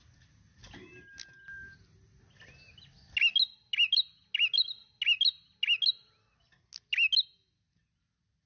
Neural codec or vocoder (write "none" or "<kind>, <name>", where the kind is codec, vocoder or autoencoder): none